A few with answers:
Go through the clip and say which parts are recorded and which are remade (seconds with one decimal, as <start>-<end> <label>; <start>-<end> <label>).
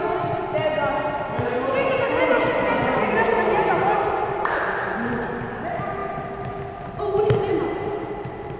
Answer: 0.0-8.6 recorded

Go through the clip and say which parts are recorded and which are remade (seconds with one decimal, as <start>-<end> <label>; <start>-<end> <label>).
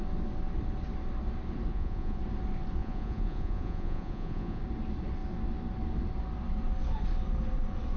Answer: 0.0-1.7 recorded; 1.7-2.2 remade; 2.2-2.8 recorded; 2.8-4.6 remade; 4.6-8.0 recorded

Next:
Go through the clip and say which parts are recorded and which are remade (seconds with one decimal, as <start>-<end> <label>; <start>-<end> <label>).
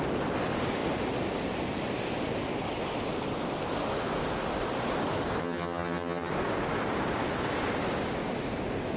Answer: 0.0-5.4 recorded; 5.4-6.3 remade; 6.3-9.0 recorded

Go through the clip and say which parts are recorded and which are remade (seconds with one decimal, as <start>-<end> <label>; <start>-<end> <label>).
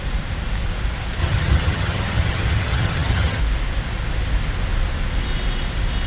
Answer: 0.0-1.2 recorded; 1.2-3.4 remade; 3.4-6.1 recorded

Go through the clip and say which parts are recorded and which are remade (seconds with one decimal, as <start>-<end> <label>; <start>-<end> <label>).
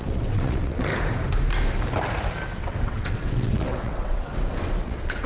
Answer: 0.0-0.9 remade; 0.9-2.6 recorded; 2.6-5.3 remade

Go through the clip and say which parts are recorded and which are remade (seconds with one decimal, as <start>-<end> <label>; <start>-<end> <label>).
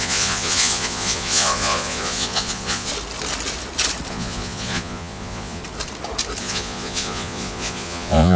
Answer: 0.0-2.9 remade; 2.9-4.1 recorded; 4.1-5.6 remade; 5.6-6.4 recorded; 6.4-8.4 remade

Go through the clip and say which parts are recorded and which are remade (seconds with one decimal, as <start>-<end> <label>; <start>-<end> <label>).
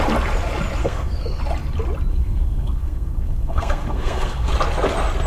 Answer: 0.0-0.8 recorded; 0.8-1.4 remade; 1.4-2.1 recorded; 2.1-4.5 remade; 4.5-5.3 recorded